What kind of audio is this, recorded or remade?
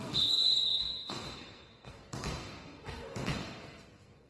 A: remade